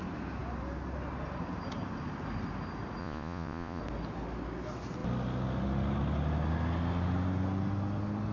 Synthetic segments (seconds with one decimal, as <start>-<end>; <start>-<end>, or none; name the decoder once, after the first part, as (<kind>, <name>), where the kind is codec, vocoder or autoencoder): 3.0-3.8 (vocoder, Vocos)